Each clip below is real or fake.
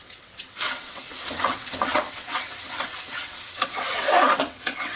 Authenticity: fake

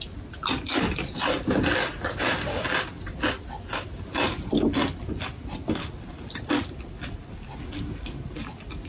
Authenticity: real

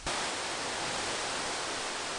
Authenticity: real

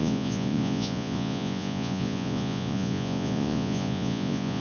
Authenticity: fake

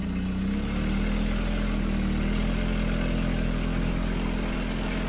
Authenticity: real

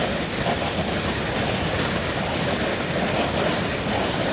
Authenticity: real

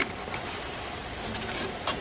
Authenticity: real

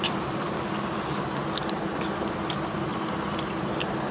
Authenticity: real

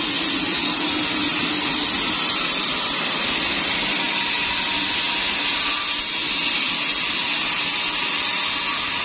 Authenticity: real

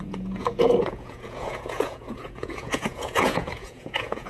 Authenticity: fake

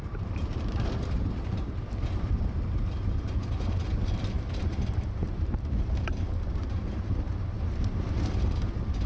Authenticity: fake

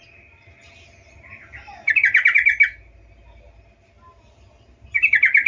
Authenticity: real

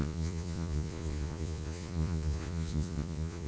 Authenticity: fake